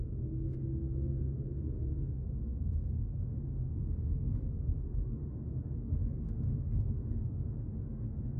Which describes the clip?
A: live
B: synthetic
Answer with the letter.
B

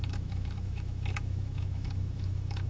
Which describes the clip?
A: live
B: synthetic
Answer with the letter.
B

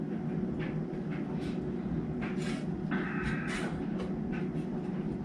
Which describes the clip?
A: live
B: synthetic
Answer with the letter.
A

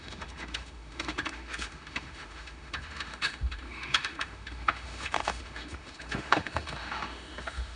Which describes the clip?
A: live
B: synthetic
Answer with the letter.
B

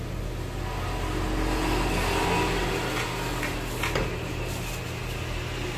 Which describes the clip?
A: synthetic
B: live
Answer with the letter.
B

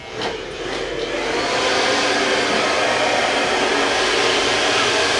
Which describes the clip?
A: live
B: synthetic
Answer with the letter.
A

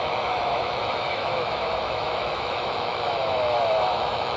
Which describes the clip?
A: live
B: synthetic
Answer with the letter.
B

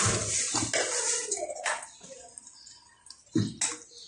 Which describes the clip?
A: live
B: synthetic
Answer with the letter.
A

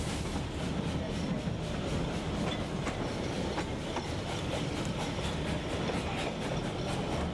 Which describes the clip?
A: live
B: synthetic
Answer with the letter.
A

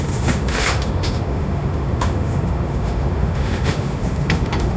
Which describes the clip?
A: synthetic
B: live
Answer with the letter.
A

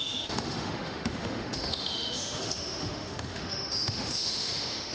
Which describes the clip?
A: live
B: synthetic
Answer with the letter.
B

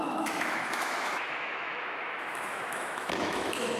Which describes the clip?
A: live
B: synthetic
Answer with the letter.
B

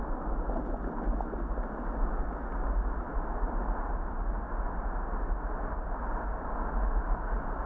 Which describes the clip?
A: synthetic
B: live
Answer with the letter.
B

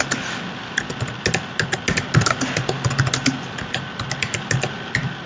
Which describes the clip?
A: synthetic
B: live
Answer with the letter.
B